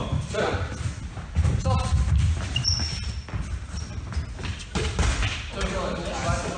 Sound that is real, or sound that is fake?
real